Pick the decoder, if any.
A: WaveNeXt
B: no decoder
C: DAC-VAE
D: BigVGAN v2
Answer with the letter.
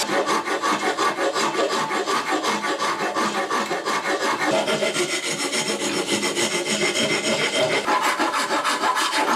B